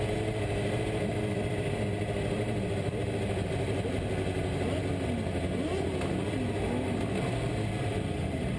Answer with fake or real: real